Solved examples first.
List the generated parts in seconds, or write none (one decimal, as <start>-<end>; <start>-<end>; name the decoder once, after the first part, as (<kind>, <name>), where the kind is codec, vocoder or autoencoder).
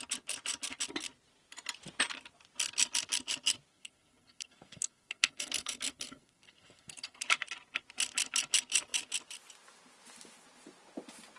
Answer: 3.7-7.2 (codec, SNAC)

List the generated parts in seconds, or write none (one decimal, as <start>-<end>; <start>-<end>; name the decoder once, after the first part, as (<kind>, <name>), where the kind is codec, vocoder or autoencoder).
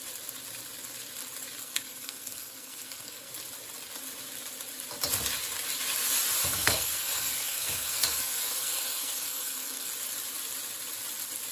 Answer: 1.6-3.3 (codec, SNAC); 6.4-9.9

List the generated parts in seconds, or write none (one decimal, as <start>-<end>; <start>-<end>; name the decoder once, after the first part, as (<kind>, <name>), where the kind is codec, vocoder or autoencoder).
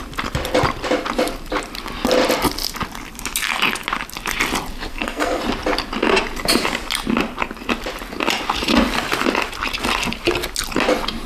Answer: 4.9-5.4 (codec, SNAC)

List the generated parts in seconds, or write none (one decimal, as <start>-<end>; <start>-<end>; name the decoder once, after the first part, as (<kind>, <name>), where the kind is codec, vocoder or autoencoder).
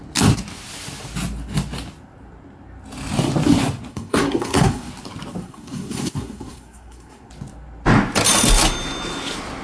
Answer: 3.9-4.9 (codec, SNAC); 5.4-7.3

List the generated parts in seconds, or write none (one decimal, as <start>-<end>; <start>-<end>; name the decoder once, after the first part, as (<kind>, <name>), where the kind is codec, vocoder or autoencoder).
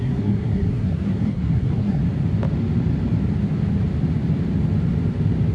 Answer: 0.0-2.0 (codec, SNAC)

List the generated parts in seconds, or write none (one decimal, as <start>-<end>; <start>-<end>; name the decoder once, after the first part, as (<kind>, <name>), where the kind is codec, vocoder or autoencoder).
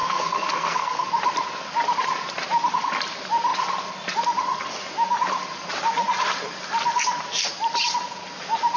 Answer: 0.0-1.1 (codec, SNAC)